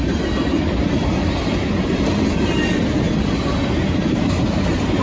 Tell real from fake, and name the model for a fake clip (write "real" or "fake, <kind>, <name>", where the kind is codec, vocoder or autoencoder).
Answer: real